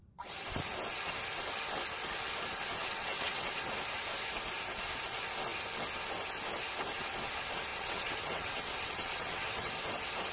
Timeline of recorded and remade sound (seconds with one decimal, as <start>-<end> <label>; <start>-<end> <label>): 0.0-2.8 recorded; 2.8-3.5 remade; 3.5-7.7 recorded; 7.7-9.7 remade; 9.7-10.3 recorded